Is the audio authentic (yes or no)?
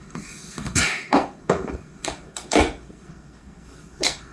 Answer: no